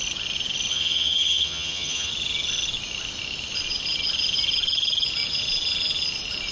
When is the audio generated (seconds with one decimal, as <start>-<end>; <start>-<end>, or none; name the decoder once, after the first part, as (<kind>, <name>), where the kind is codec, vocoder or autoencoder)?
0.7-2.1 (vocoder, HiFi-GAN)